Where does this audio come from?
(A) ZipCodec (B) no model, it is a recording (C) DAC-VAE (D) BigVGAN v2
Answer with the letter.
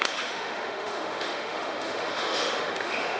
C